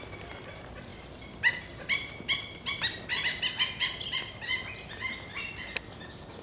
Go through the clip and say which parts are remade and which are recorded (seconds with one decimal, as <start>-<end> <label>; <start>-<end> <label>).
0.0-6.4 recorded

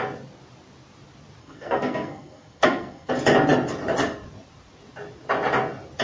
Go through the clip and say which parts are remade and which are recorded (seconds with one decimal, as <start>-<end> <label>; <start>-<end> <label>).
0.0-1.4 recorded; 1.4-3.1 remade; 3.1-6.0 recorded

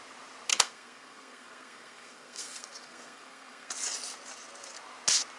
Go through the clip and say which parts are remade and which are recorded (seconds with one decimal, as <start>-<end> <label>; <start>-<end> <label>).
0.0-0.5 recorded; 0.5-3.7 remade; 3.7-5.4 recorded

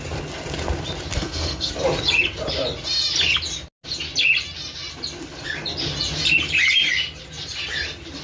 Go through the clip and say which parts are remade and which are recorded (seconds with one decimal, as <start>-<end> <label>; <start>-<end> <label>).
0.0-1.1 recorded; 1.1-1.7 remade; 1.7-8.2 recorded

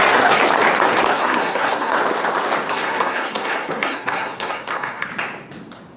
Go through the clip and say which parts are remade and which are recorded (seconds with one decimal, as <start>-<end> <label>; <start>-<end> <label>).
0.0-0.4 remade; 0.4-1.1 recorded; 1.1-2.0 remade; 2.0-2.7 recorded; 2.7-5.1 remade; 5.1-6.0 recorded

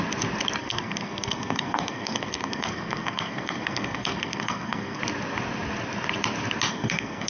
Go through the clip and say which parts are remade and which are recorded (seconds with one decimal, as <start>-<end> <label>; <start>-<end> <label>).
0.0-0.6 recorded; 0.6-5.0 remade; 5.0-6.7 recorded; 6.7-7.3 remade